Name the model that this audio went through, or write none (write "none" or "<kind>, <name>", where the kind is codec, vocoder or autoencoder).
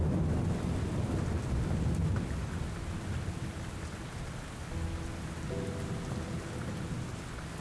none